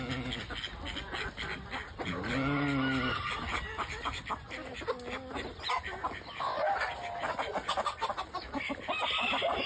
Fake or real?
real